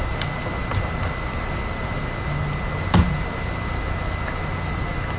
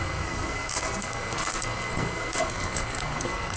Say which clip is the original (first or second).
first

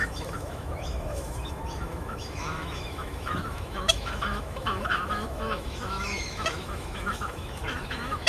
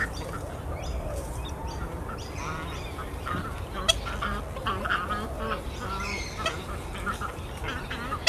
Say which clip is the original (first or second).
second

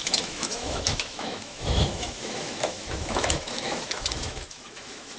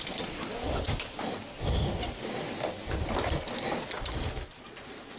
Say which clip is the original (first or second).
second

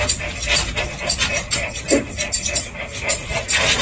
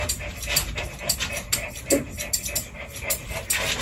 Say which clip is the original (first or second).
second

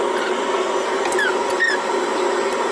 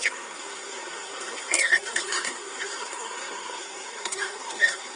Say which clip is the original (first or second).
first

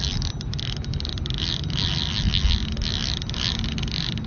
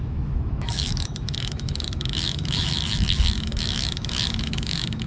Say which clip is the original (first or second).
first